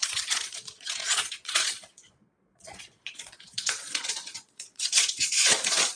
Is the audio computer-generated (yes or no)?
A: yes